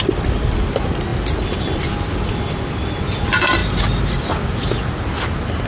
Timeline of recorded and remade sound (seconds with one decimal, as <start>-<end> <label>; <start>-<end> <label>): 0.0-5.7 recorded